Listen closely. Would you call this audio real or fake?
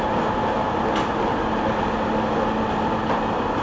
real